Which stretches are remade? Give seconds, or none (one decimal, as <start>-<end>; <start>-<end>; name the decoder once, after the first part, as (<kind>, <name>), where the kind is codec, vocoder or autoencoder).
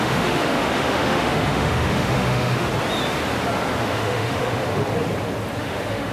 0.0-2.7 (autoencoder, DAC-VAE); 3.8-4.8; 5.6-6.1